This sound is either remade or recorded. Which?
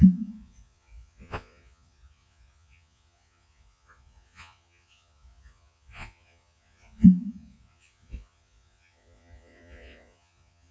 remade